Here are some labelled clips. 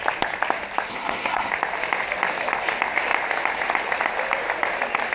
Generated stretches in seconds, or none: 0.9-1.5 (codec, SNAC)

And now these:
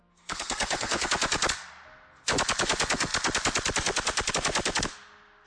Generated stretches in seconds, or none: 0.0-1.1 (codec, SNAC)

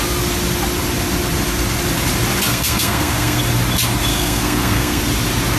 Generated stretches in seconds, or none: 2.5-3.4 (codec, SNAC); 4.1-5.0

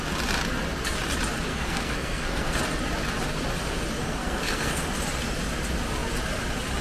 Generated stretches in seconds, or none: 1.5-2.6 (codec, SNAC); 4.0-4.9

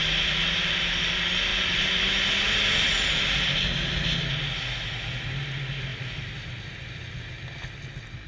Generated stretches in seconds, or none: none